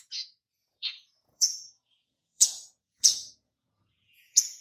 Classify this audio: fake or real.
fake